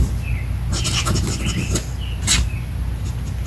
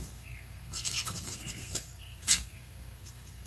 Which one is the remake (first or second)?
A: second